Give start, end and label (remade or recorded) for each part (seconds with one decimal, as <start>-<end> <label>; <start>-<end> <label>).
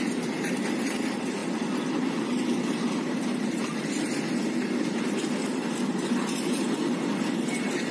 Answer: 0.0-7.9 recorded